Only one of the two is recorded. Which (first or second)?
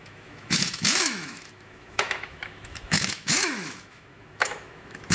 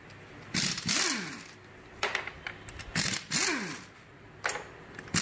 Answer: second